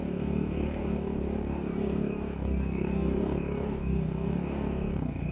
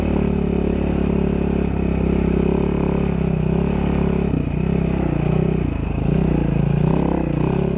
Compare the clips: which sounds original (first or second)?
second